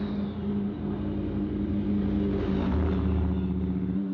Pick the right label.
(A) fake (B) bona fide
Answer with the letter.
B